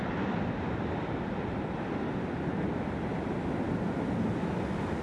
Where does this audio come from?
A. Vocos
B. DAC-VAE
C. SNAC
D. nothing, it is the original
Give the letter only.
D